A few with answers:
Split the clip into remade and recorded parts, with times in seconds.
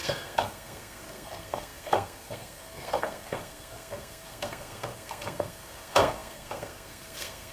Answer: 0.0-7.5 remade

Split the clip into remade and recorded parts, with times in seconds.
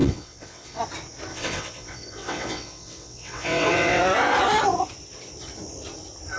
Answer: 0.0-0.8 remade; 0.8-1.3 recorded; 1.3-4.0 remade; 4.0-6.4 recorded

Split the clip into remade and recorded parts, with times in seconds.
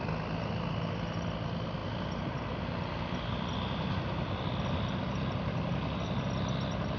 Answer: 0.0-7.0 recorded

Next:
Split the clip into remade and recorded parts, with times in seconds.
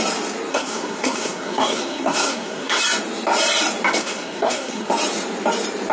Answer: 0.0-0.5 recorded; 0.5-2.8 remade; 2.8-4.0 recorded; 4.0-4.9 remade; 4.9-5.9 recorded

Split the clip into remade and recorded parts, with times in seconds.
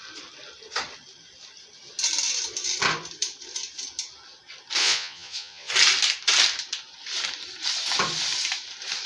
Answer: 0.0-4.8 recorded; 4.8-5.7 remade; 5.7-9.1 recorded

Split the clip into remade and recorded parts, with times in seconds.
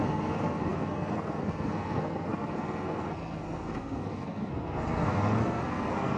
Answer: 0.0-6.2 remade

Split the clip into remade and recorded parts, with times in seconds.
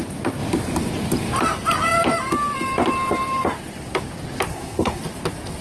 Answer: 0.0-4.5 recorded; 4.5-5.0 remade; 5.0-5.6 recorded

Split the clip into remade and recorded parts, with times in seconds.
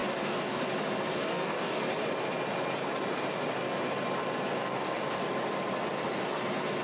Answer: 0.0-0.6 remade; 0.6-1.1 recorded; 1.1-1.8 remade; 1.8-4.6 recorded; 4.6-5.2 remade; 5.2-6.8 recorded